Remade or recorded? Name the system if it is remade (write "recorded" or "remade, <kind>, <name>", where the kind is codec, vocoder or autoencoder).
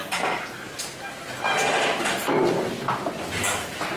recorded